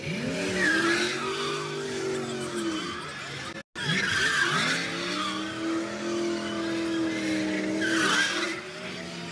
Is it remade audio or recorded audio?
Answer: recorded